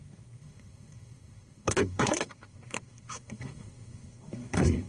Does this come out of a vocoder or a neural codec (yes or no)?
yes